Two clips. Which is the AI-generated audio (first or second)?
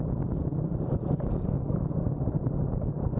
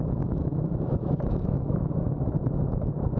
second